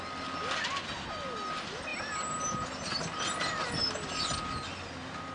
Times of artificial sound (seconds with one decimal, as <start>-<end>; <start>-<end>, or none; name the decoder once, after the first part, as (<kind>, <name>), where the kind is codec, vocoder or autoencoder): none